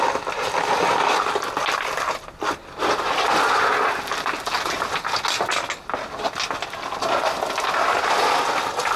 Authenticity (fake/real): real